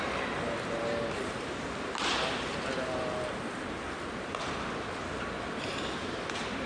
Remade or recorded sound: recorded